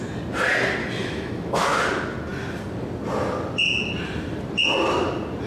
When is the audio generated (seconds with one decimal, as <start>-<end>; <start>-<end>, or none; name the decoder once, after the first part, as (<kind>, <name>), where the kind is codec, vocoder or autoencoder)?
0.8-1.8 (autoencoder, DAC-VAE)